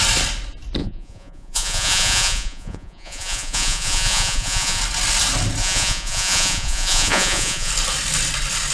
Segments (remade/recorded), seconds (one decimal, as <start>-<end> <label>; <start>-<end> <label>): 0.0-0.8 recorded; 0.8-4.8 remade; 4.8-5.6 recorded; 5.6-7.7 remade; 7.7-8.7 recorded